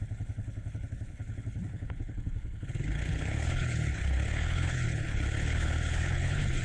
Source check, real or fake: fake